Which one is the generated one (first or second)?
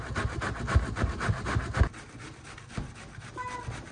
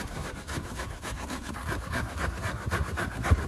second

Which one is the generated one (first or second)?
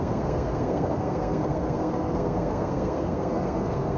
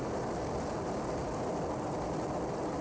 first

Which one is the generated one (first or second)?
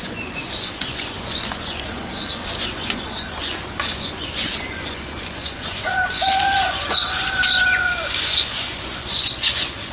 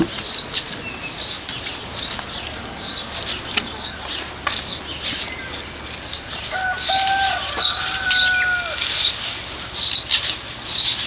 first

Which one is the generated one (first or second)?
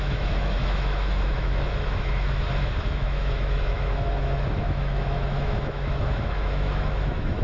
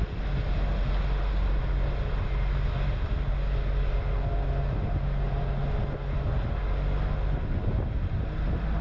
first